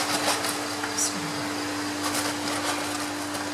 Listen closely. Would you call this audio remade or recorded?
recorded